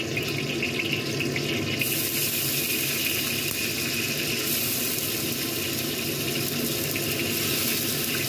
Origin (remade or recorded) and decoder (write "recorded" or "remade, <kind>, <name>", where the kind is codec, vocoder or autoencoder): recorded